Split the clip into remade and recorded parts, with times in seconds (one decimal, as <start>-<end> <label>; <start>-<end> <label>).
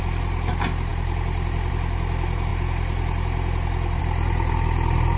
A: 0.0-5.2 recorded